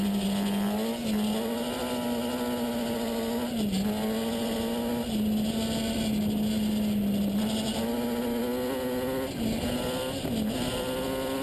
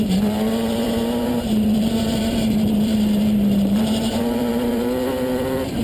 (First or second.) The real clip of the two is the first